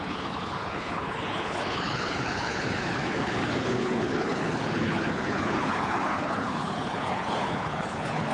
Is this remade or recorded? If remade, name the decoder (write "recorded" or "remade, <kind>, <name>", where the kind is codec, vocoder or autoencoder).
remade, codec, HILCodec